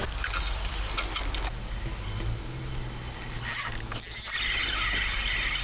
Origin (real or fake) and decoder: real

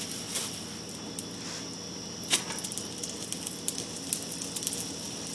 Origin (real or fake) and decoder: real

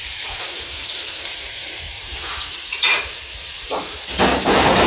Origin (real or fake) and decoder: fake, vocoder, BigVGAN v2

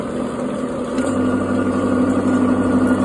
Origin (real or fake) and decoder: real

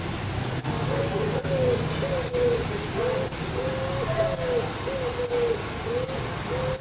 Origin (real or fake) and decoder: real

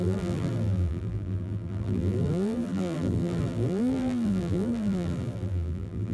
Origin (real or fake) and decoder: fake, vocoder, BigVGAN v2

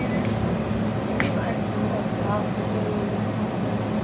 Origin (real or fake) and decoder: real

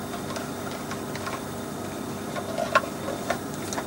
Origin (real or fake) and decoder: real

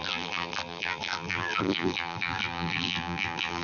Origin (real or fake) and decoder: fake, vocoder, BigVGAN v2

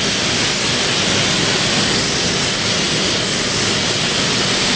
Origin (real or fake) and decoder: real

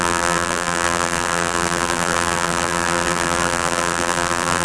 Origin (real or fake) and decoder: fake, vocoder, BigVGAN v2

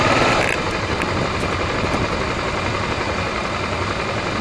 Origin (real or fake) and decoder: real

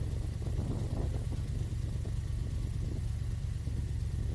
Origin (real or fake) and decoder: real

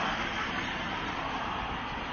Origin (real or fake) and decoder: fake, vocoder, BigVGAN v2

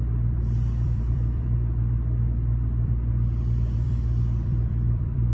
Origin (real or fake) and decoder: fake, vocoder, BigVGAN v2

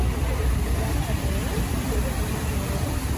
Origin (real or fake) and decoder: fake, vocoder, BigVGAN v2